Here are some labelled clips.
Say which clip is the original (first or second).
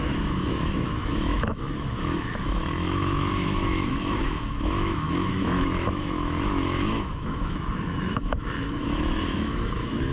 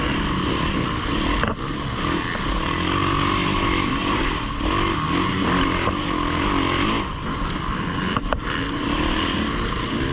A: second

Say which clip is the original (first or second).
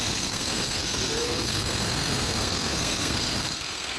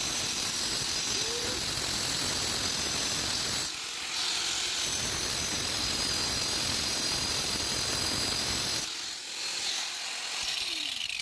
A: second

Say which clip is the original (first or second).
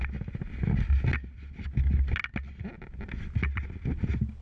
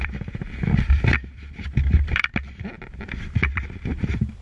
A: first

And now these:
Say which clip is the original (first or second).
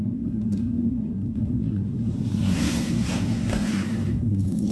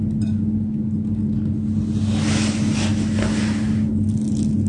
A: second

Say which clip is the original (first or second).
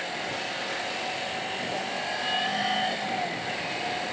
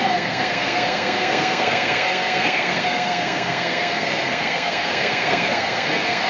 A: first